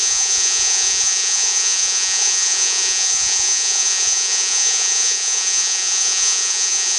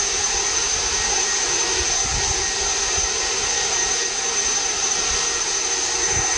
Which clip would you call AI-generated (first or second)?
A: first